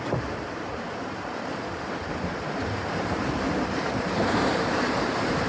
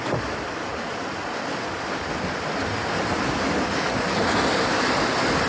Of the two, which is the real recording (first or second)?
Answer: second